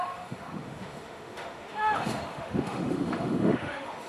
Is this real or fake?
fake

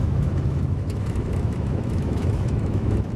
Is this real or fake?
fake